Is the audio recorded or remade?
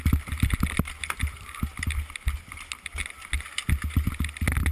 recorded